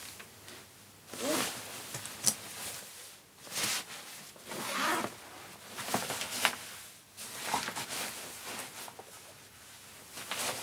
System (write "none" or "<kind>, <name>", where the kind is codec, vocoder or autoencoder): none